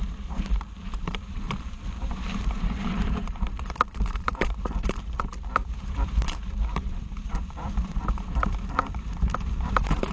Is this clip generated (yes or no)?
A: yes